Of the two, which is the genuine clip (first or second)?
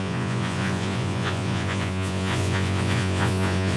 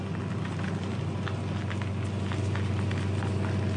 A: second